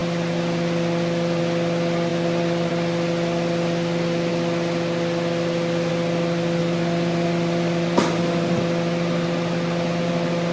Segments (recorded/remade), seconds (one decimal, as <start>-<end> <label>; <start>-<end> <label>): 0.0-1.4 remade; 1.4-2.1 recorded; 2.1-2.7 remade; 2.7-6.6 recorded; 6.6-10.1 remade; 10.1-10.5 recorded